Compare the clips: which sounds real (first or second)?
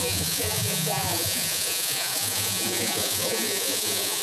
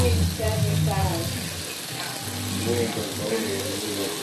second